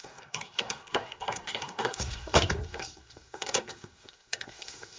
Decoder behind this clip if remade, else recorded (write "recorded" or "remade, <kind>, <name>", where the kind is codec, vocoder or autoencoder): remade, codec, SNAC